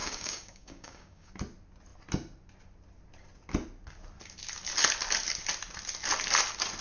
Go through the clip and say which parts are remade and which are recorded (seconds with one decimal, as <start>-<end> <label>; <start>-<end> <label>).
0.0-1.3 remade; 1.3-6.8 recorded